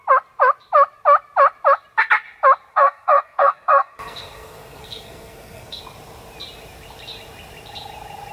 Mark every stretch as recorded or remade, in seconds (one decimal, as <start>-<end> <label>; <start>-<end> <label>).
0.0-2.7 recorded; 2.7-5.8 remade; 5.8-8.3 recorded